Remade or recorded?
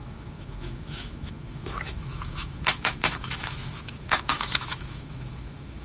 remade